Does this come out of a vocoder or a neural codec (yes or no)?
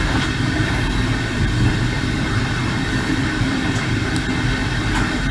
no